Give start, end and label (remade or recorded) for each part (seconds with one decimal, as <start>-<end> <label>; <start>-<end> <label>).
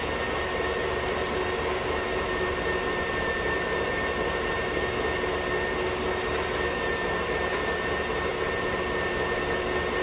0.0-10.0 recorded